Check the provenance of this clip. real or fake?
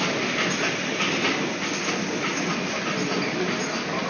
real